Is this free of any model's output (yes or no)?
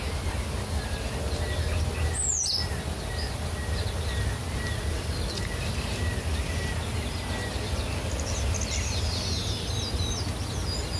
yes